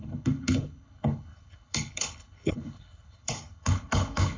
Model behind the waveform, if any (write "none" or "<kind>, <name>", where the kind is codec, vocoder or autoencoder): codec, HILCodec